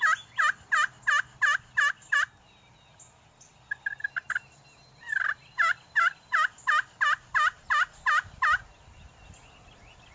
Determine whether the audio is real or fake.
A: real